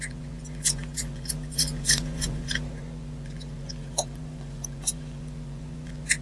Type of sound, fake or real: fake